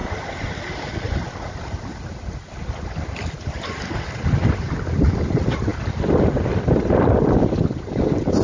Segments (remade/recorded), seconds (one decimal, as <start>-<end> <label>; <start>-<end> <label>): 0.0-8.4 recorded